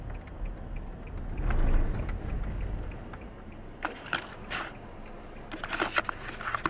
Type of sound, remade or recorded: recorded